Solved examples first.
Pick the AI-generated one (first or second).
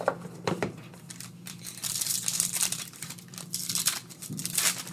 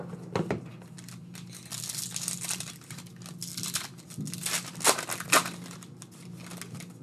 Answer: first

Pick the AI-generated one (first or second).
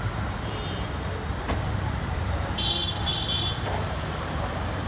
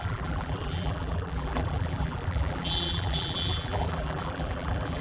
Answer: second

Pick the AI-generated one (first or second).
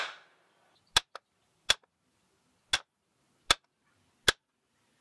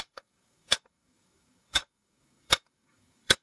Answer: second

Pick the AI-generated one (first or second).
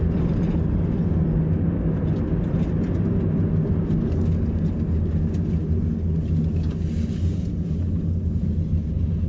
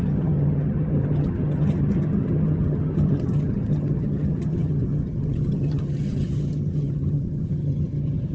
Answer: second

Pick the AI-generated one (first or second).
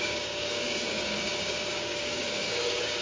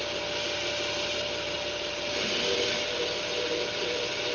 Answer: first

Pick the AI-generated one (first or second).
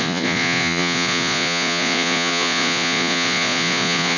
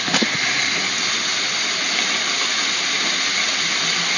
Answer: first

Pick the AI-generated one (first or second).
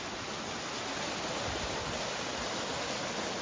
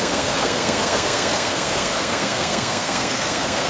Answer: second